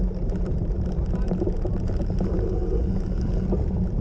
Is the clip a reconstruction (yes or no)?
no